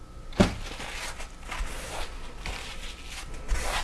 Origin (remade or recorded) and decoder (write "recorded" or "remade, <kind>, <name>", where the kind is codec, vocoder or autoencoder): recorded